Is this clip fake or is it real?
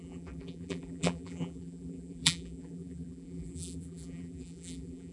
fake